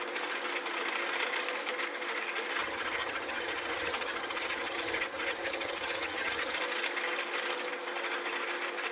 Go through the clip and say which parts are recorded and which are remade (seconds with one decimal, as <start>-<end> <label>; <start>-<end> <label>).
0.0-2.6 recorded; 2.6-6.6 remade; 6.6-8.9 recorded